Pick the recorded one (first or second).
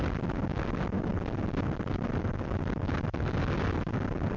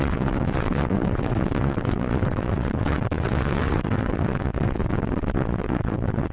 first